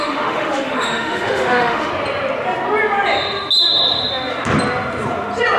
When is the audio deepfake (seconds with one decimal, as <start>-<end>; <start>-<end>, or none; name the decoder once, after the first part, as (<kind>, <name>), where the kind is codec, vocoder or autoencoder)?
0.0-1.9 (autoencoder, DAC-VAE)